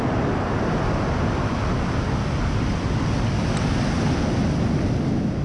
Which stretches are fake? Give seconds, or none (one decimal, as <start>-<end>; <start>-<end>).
none